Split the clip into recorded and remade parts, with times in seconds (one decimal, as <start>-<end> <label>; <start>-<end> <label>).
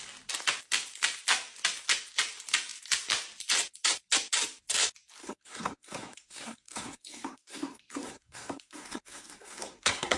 0.0-5.2 recorded; 5.2-10.2 remade